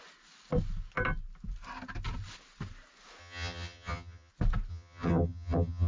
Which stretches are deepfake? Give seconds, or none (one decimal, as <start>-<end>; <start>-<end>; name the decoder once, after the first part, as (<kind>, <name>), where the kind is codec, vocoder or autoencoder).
3.2-4.3 (vocoder, HiFi-GAN); 4.7-5.9